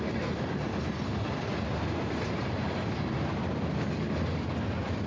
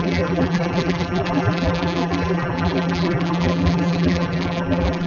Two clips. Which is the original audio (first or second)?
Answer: first